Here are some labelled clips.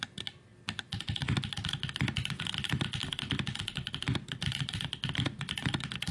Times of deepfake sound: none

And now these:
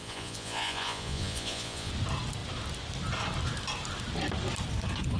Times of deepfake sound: 0.0-1.9 (vocoder, Vocos)

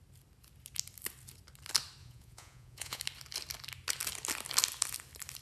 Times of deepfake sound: 2.0-3.0 (vocoder, Vocos)